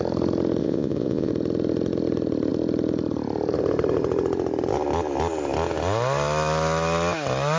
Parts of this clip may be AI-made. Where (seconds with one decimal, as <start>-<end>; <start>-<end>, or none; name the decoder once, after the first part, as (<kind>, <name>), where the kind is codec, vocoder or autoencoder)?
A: 0.6-1.3 (vocoder, Vocos)